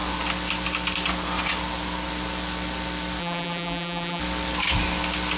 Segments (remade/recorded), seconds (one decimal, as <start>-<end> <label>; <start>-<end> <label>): 0.0-3.2 recorded; 3.2-4.2 remade; 4.2-5.4 recorded